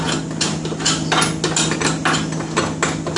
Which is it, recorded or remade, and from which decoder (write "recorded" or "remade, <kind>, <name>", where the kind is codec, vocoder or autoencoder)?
recorded